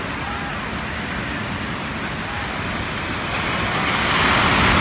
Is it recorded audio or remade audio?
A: recorded